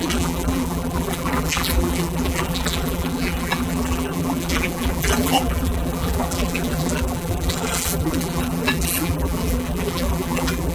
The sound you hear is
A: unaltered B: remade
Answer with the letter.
B